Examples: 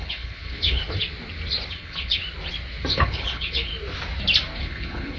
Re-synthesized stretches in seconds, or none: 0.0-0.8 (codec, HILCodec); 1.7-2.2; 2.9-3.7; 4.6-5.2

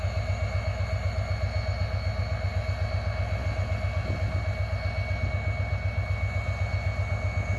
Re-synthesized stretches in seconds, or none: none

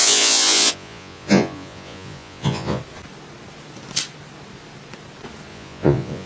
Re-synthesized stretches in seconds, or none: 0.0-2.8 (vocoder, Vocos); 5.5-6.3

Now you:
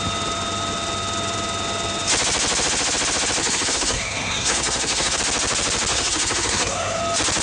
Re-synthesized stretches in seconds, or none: 3.4-5.2 (codec, SNAC); 5.9-7.0

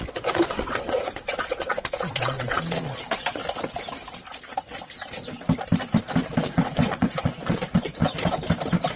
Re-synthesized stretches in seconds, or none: 0.0-3.4 (vocoder, Vocos); 6.4-8.0

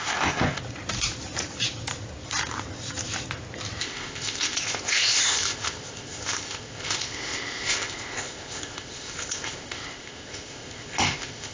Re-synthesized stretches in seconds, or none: 0.0-0.6 (codec, ZipCodec); 3.8-11.5